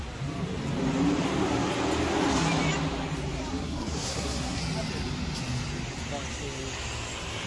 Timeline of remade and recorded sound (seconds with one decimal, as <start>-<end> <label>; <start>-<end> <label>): 0.0-3.5 recorded; 3.5-4.6 remade; 4.6-7.5 recorded